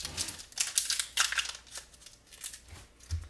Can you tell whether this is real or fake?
real